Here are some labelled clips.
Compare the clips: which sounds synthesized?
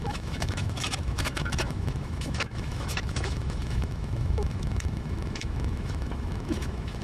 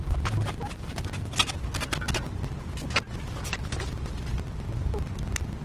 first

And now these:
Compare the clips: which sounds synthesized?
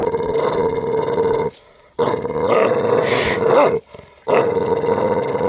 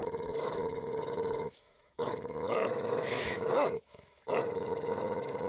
second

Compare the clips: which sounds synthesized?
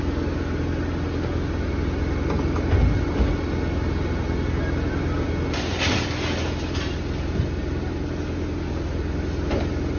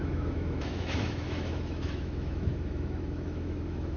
second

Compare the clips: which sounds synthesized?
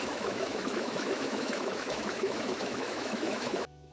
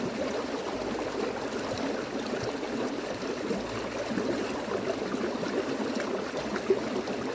first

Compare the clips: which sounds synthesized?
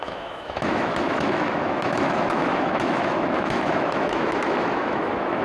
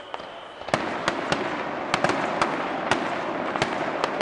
first